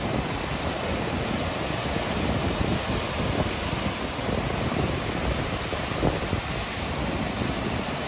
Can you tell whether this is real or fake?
real